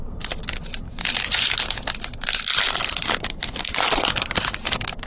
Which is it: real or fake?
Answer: real